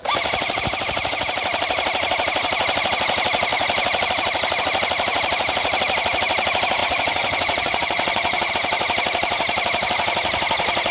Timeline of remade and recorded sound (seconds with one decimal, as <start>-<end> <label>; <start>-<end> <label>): 0.0-6.8 recorded; 6.8-8.5 remade; 8.5-10.9 recorded